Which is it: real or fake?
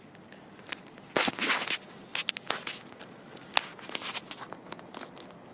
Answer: real